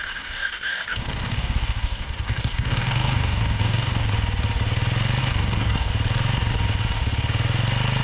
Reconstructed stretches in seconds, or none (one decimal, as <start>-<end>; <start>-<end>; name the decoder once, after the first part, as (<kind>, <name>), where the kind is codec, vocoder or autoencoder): 0.0-4.1 (codec, DAC); 5.2-5.9